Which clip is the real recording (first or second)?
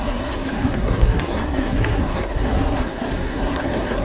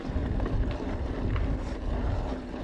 second